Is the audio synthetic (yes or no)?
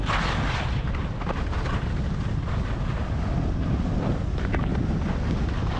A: no